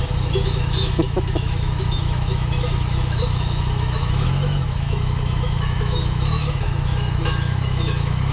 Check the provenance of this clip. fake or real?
fake